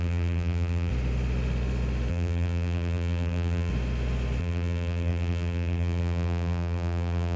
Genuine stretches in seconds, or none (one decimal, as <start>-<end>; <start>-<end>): 0.9-2.1; 3.7-4.4